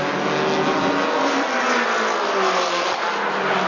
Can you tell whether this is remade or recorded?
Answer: recorded